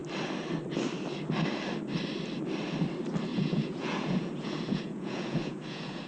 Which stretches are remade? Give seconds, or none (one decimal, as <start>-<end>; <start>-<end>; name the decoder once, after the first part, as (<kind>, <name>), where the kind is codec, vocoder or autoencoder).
3.3-6.1 (vocoder, Vocos)